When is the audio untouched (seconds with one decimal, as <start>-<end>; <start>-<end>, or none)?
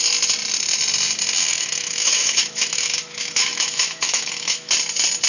0.0-1.5; 4.7-5.3